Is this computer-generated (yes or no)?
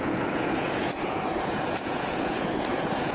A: yes